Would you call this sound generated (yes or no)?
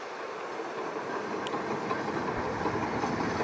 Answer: no